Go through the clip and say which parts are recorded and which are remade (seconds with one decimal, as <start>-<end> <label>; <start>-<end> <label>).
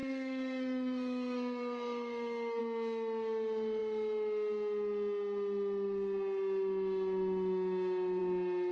0.0-2.6 remade; 2.6-8.7 recorded